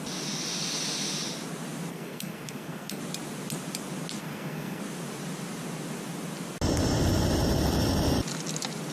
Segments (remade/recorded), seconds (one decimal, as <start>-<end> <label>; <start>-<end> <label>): 0.0-1.9 recorded; 1.9-3.0 remade; 3.0-4.2 recorded; 4.2-4.8 remade; 4.8-8.9 recorded